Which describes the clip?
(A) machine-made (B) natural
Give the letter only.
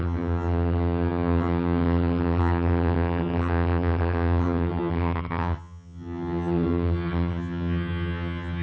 A